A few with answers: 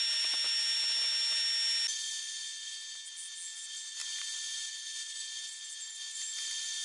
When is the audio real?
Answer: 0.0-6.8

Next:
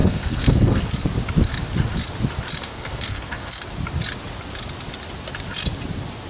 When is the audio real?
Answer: 0.8-2.6; 3.6-6.3

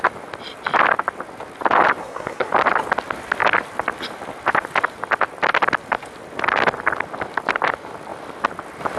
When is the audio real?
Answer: 0.0-2.0; 2.5-9.0

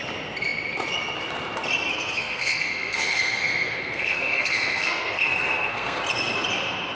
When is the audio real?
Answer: 0.0-1.9; 6.0-6.9